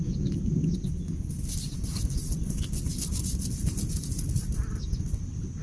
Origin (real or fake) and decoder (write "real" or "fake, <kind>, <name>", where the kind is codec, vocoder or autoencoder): real